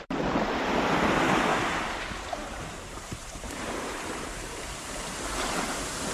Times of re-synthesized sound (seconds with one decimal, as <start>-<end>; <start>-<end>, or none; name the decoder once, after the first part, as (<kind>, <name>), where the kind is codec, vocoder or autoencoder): 1.5-4.9 (vocoder, BigVGAN v2)